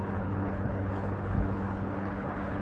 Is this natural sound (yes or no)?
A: no